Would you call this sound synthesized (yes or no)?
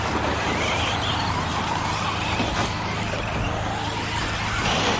no